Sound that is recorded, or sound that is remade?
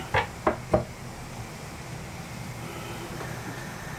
recorded